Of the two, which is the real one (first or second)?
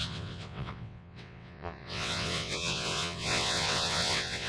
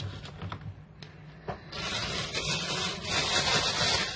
second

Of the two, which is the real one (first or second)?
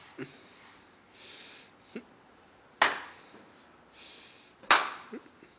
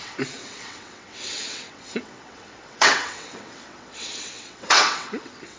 first